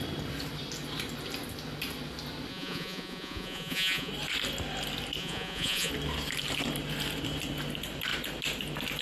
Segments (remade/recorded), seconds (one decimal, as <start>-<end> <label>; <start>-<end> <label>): 0.0-2.5 recorded; 2.5-4.1 remade; 4.1-5.2 recorded; 5.2-5.9 remade; 5.9-9.0 recorded